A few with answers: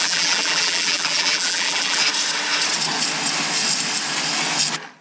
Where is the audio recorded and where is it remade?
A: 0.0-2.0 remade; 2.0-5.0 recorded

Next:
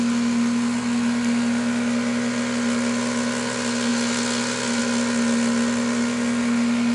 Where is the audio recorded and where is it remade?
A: 0.0-6.9 recorded

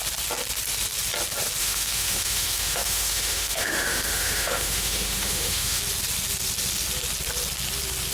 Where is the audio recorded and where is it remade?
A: 0.0-1.6 recorded; 1.6-5.8 remade; 5.8-8.1 recorded